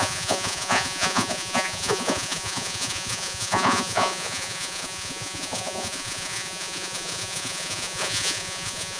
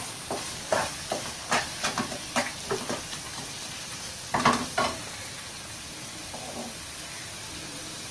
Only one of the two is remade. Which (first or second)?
first